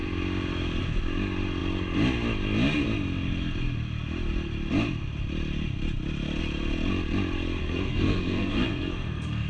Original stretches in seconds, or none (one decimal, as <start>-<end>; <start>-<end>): 0.0-7.6